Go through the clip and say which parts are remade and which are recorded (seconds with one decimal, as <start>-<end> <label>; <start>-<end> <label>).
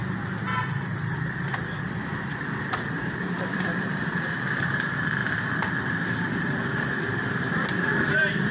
0.0-0.9 recorded; 0.9-5.2 remade; 5.2-7.7 recorded; 7.7-8.5 remade